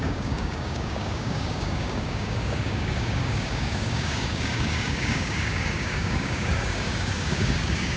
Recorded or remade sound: remade